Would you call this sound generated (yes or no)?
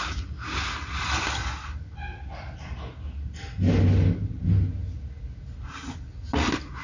no